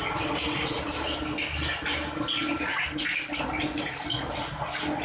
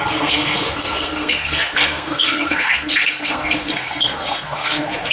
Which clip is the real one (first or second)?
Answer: first